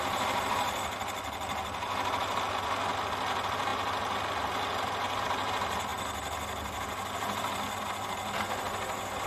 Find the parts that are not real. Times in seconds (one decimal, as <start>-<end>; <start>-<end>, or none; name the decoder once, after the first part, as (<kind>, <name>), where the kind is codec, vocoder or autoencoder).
none

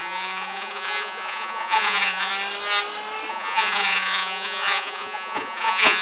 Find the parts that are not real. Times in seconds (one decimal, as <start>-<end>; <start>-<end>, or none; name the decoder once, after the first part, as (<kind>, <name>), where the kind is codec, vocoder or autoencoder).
0.0-2.3 (vocoder, Vocos); 3.3-6.0